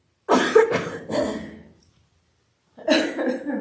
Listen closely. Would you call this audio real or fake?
real